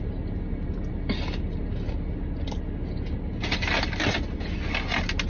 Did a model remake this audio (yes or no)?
no